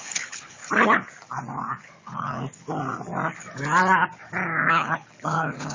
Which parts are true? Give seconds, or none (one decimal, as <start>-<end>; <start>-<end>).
0.6-1.8; 2.4-4.7